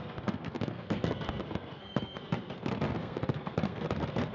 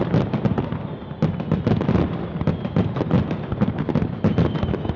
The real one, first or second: second